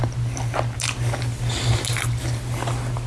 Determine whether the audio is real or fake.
real